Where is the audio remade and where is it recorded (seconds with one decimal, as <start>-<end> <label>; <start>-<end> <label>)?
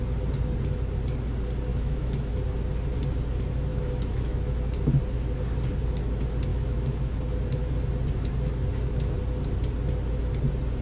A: 0.0-1.7 recorded; 1.7-2.3 remade; 2.3-3.7 recorded; 3.7-4.4 remade; 4.4-6.5 recorded; 6.5-7.1 remade; 7.1-10.8 recorded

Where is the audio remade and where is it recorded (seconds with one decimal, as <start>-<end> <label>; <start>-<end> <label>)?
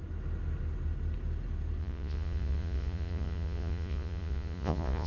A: 0.0-1.8 recorded; 1.8-5.1 remade